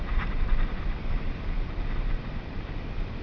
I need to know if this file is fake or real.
real